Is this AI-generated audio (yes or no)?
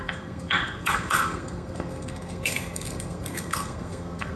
yes